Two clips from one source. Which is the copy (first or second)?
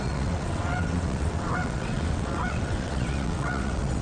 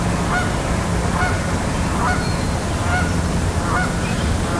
first